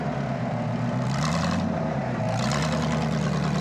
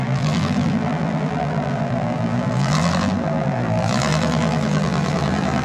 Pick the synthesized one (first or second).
second